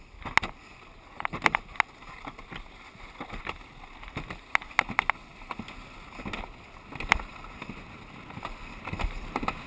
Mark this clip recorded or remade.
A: recorded